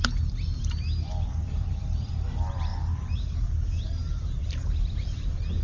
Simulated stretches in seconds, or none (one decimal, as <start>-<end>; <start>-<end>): 1.4-2.1; 2.7-4.5